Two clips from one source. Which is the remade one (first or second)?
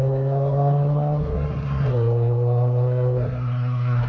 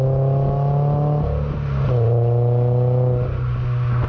first